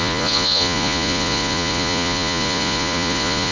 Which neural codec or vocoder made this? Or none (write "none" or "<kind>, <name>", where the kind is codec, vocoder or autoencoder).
vocoder, Vocos